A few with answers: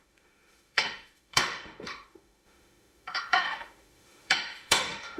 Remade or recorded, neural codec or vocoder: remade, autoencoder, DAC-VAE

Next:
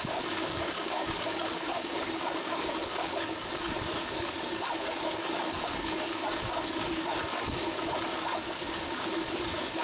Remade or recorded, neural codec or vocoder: remade, codec, DAC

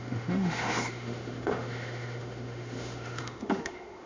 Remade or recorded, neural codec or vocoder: remade, autoencoder, DAC-VAE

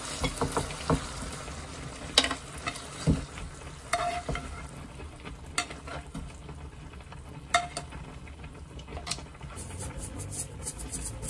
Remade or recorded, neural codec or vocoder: recorded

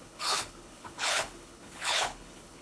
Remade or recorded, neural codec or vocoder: remade, codec, HILCodec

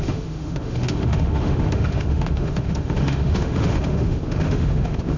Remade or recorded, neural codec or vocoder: remade, autoencoder, DAC-VAE